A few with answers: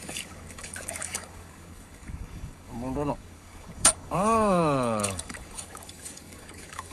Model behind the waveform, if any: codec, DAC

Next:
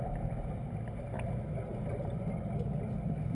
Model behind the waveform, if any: none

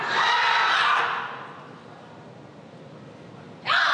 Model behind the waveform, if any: none